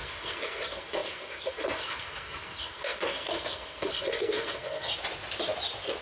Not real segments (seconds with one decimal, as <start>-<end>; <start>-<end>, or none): 0.0-4.9